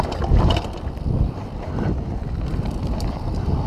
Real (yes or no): yes